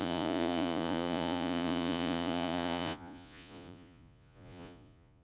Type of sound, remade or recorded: remade